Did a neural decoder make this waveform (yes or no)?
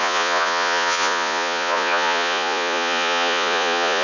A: yes